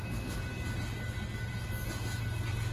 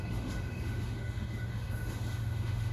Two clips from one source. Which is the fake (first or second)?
second